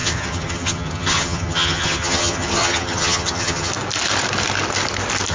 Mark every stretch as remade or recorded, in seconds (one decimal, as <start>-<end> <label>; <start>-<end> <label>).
0.0-3.7 remade; 3.7-5.3 recorded